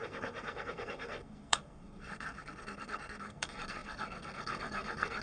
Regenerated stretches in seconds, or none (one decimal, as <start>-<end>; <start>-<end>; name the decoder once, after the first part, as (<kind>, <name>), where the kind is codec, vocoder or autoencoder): 0.0-5.2 (codec, SNAC)